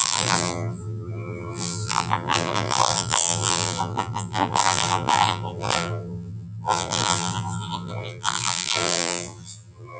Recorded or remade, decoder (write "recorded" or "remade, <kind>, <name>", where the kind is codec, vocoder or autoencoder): remade, vocoder, BigVGAN v2